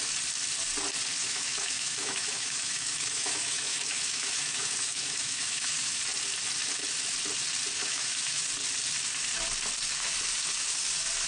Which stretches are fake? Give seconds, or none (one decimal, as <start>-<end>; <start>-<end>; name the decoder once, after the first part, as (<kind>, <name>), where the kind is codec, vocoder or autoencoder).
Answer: 1.2-6.0 (autoencoder, DAC-VAE); 7.8-8.4